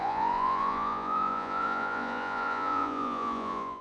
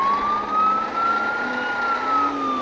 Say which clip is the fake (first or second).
first